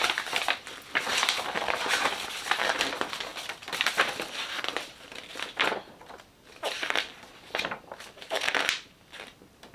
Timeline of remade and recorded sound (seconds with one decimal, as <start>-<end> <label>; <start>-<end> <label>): 0.0-3.3 recorded; 3.3-3.9 remade; 3.9-5.3 recorded; 5.3-6.4 remade; 6.4-9.7 recorded